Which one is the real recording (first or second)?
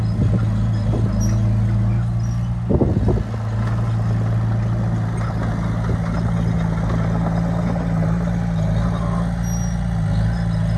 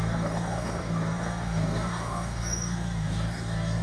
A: first